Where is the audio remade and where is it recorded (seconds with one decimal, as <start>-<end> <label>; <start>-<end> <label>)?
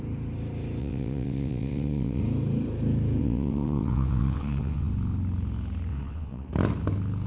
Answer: 0.0-0.8 recorded; 0.8-2.2 remade; 2.2-3.2 recorded; 3.2-4.9 remade; 4.9-5.9 recorded; 5.9-6.5 remade; 6.5-7.3 recorded